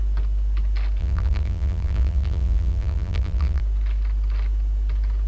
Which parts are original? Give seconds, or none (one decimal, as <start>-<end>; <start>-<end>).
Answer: 0.0-1.0; 3.6-5.3